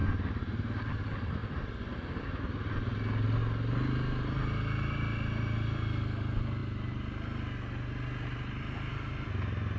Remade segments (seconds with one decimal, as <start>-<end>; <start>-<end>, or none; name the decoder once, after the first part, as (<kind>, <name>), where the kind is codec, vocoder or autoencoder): 1.4-2.4 (vocoder, BigVGAN v2)